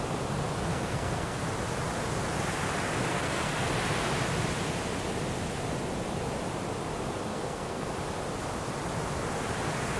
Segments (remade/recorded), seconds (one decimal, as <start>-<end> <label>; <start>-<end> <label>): 0.0-0.7 recorded; 0.7-1.4 remade; 1.4-3.1 recorded; 3.1-3.7 remade; 3.7-7.3 recorded; 7.3-7.9 remade; 7.9-10.0 recorded